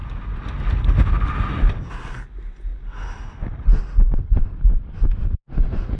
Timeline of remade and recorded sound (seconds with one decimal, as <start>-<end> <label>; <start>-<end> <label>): 0.0-6.0 recorded